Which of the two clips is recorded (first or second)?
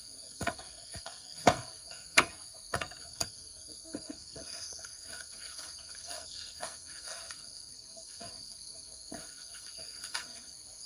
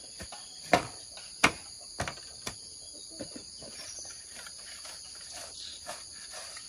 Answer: second